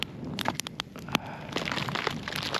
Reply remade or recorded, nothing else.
recorded